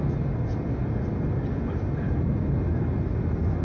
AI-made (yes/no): no